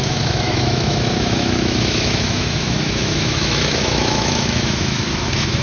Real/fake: fake